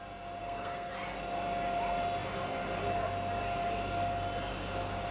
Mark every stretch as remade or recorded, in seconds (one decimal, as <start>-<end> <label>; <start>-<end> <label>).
0.0-0.4 recorded; 0.4-0.9 remade; 0.9-5.1 recorded